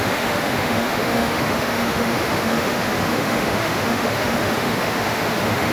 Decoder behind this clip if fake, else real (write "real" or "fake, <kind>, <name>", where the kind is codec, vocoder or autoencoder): fake, autoencoder, DAC-VAE